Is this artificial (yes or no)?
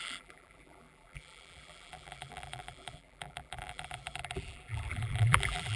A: yes